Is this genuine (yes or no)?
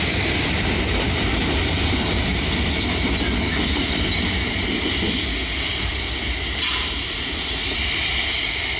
yes